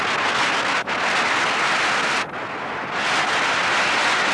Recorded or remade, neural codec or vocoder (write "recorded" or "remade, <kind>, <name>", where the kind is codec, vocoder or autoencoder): recorded